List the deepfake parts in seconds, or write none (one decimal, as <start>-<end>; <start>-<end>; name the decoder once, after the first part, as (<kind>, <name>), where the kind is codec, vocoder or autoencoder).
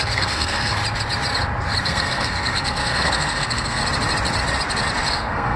0.0-0.8 (codec, SNAC); 1.8-3.8; 5.1-5.6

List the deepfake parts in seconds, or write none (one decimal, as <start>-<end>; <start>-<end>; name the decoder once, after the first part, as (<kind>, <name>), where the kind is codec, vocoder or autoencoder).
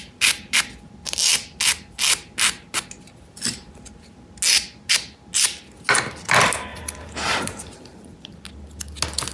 6.7-8.2 (vocoder, BigVGAN v2)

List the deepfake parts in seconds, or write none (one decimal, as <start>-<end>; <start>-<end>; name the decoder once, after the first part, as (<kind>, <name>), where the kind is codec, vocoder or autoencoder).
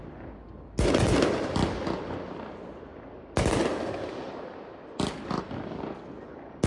none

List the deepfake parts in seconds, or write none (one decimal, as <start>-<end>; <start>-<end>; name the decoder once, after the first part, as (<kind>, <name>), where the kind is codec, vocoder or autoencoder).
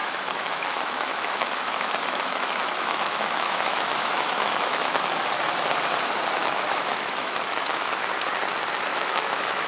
0.0-5.0 (autoencoder, DAC-VAE); 6.4-7.9; 8.9-9.7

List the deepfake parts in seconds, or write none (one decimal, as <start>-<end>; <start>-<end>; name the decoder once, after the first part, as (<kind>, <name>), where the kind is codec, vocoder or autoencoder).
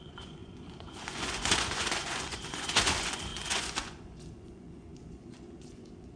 0.0-6.2 (vocoder, Vocos)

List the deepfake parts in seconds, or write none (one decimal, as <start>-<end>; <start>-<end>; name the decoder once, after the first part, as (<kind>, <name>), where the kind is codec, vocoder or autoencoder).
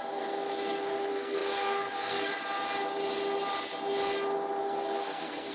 0.0-2.3 (codec, SNAC); 4.6-5.5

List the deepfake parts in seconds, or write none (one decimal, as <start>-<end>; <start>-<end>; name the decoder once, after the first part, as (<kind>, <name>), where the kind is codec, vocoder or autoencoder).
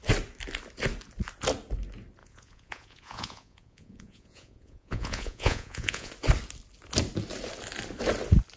2.2-6.1 (vocoder, Vocos)